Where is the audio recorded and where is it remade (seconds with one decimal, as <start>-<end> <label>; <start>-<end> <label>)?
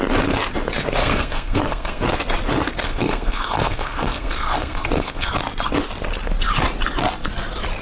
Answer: 0.0-1.0 recorded; 1.0-2.0 remade; 2.0-2.8 recorded; 2.8-5.3 remade; 5.3-7.8 recorded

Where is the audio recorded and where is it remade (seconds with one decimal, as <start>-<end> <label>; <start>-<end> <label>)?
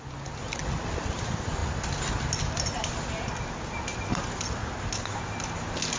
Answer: 0.0-6.0 recorded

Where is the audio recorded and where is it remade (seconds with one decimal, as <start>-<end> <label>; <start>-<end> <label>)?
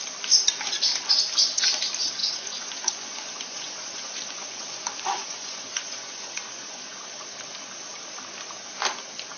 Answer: 0.0-2.2 recorded; 2.2-7.2 remade; 7.2-9.4 recorded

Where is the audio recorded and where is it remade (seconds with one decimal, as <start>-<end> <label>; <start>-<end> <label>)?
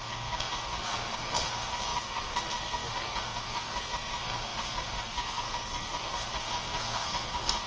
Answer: 0.0-7.7 remade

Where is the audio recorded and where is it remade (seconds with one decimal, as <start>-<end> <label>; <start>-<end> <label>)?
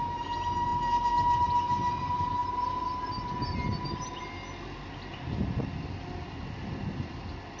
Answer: 0.0-7.6 recorded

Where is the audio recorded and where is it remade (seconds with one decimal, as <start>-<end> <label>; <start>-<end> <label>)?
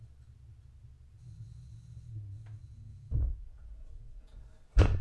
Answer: 0.0-2.6 recorded; 2.6-4.4 remade; 4.4-5.0 recorded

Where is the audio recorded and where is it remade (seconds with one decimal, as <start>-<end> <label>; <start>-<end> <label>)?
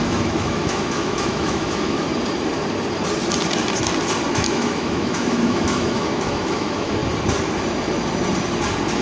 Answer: 0.0-2.1 remade; 2.1-4.3 recorded; 4.3-7.0 remade; 7.0-9.0 recorded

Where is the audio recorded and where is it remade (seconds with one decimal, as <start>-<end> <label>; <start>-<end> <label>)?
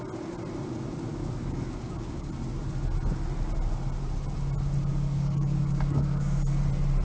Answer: 0.0-1.1 recorded; 1.1-2.3 remade; 2.3-4.9 recorded; 4.9-6.6 remade; 6.6-7.0 recorded